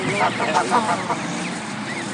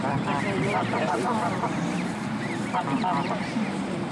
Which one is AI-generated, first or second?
second